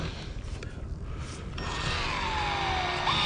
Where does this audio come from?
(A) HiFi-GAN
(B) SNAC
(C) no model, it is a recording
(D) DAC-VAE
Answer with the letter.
C